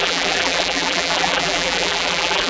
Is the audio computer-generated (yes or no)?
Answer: yes